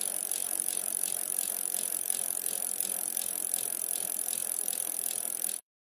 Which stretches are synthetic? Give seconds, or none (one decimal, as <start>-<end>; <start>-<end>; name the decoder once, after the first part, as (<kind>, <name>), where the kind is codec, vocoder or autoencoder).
0.4-2.5 (vocoder, BigVGAN v2); 4.4-6.0